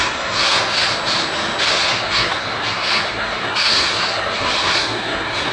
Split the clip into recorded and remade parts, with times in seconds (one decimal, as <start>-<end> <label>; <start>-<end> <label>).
0.0-0.9 remade; 0.9-1.6 recorded; 1.6-5.5 remade